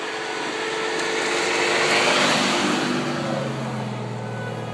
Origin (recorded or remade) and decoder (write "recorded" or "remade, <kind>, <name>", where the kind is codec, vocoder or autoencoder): recorded